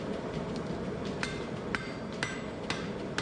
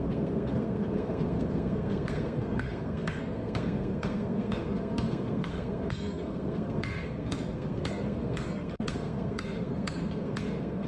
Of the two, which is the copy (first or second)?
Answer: second